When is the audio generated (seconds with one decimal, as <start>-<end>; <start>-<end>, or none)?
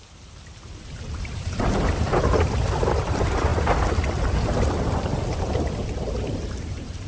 0.0-3.5; 4.5-7.1